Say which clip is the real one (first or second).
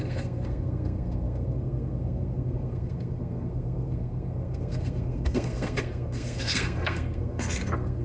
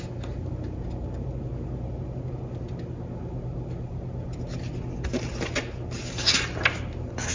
second